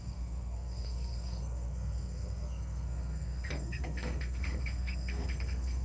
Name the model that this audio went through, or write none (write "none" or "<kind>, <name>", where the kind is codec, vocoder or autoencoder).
codec, SNAC